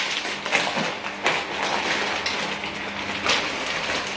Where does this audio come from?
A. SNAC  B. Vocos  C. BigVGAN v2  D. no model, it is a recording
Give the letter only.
D